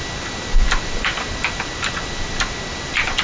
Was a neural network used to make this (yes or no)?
no